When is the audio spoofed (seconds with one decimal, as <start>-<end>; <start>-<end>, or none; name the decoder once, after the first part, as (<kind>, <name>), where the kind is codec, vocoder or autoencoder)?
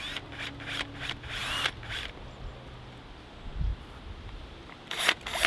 1.4-1.9 (vocoder, BigVGAN v2); 3.7-5.0